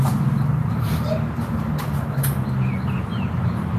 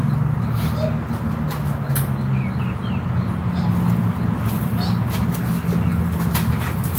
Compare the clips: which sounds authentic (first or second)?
second